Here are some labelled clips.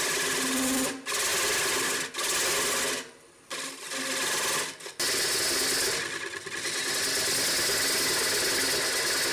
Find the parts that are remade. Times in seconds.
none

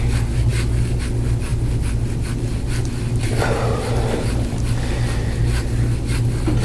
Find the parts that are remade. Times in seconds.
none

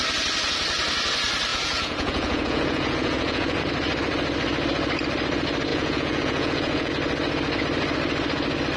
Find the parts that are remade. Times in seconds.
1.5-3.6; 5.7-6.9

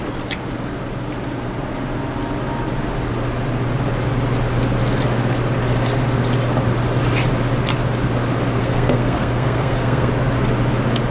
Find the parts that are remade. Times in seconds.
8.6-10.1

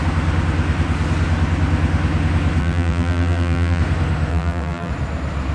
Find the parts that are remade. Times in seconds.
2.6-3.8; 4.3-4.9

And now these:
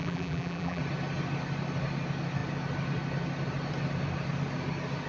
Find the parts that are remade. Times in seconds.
0.0-0.8